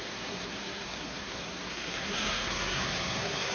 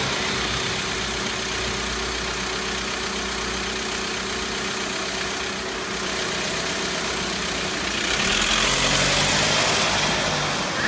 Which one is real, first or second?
second